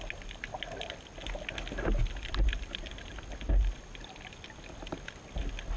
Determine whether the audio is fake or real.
real